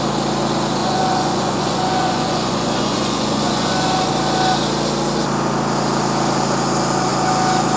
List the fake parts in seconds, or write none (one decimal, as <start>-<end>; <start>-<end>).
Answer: 0.8-4.1